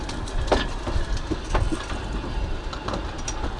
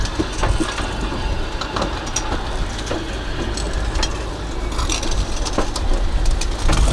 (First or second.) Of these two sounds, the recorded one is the second